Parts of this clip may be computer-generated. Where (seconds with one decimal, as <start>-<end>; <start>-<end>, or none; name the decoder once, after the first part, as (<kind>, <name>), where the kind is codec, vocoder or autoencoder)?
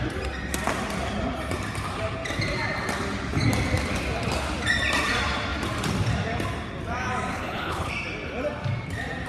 7.3-7.9 (codec, HILCodec)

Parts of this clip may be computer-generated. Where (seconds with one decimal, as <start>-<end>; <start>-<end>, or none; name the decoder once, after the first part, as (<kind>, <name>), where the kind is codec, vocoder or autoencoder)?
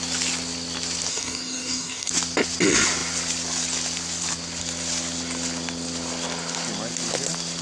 1.1-2.1 (codec, DAC)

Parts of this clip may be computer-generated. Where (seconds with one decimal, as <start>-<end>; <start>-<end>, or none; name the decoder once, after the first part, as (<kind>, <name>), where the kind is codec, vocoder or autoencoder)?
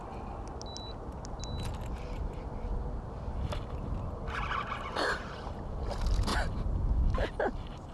none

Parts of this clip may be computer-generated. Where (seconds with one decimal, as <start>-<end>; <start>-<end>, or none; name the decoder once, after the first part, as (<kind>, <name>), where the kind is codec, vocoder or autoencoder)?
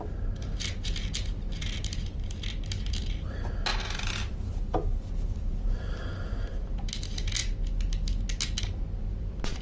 none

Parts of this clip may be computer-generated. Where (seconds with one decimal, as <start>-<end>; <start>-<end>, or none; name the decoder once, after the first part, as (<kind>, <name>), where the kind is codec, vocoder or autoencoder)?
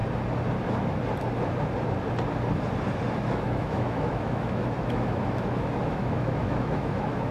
3.2-7.3 (autoencoder, DAC-VAE)